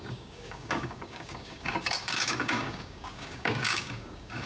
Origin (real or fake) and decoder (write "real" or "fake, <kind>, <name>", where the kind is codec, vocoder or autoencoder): fake, codec, DAC